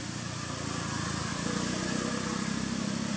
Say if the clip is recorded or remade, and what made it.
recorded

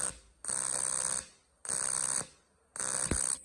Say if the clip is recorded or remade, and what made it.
recorded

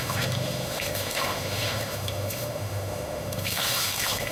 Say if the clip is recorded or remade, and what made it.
remade, autoencoder, DAC-VAE